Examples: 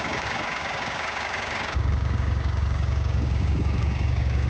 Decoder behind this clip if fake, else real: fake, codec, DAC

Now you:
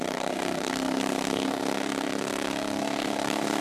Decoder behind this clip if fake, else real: fake, codec, DAC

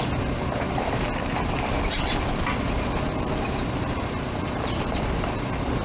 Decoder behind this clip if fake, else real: real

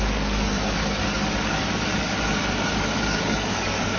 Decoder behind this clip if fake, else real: fake, codec, DAC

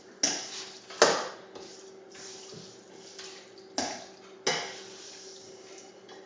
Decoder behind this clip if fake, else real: real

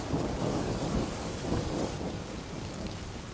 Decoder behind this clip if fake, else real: fake, codec, DAC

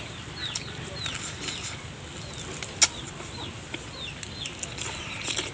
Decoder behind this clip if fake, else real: real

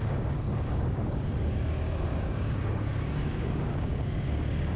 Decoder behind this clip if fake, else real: fake, codec, DAC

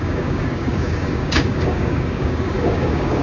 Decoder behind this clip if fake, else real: fake, codec, DAC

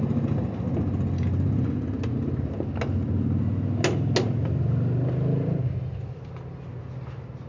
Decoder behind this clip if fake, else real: real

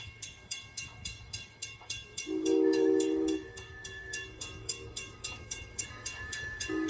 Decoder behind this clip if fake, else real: fake, codec, DAC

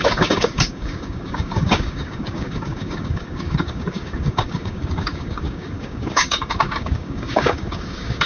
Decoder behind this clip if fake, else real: fake, codec, DAC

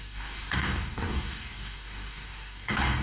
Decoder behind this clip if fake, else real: fake, codec, DAC